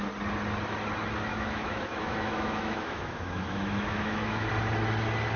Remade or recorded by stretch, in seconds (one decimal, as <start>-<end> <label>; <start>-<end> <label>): 0.0-1.3 recorded; 1.3-4.5 remade; 4.5-5.4 recorded